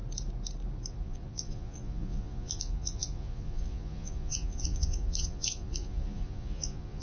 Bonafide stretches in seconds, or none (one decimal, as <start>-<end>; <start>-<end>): 0.0-0.9